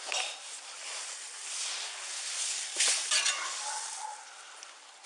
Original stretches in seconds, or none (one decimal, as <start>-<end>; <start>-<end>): 0.0-5.1